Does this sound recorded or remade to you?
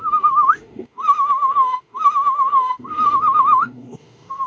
remade